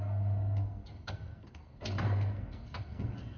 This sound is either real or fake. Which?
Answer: fake